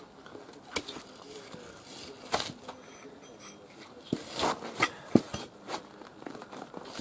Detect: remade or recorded recorded